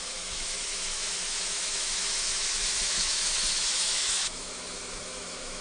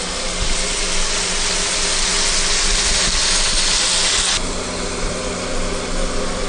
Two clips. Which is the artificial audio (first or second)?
first